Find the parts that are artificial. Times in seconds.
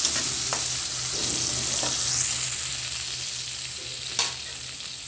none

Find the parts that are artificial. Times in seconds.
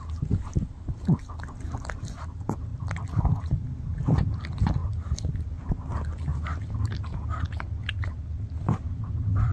2.7-3.4 (vocoder, BigVGAN v2)